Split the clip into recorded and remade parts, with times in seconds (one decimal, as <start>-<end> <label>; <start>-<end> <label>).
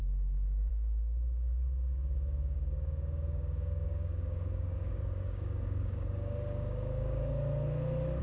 0.0-7.3 remade; 7.3-8.2 recorded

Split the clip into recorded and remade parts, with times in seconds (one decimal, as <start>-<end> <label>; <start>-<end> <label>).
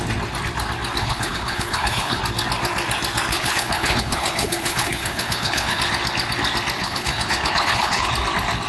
0.0-1.0 recorded; 1.0-2.2 remade; 2.2-3.3 recorded; 3.3-5.8 remade; 5.8-6.8 recorded; 6.8-8.1 remade; 8.1-8.7 recorded